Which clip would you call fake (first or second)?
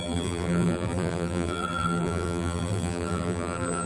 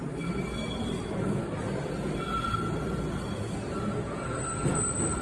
first